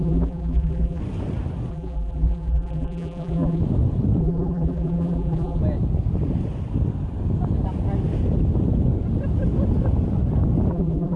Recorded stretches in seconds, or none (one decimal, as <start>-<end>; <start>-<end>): 1.0-1.7; 3.6-4.2; 5.6-10.7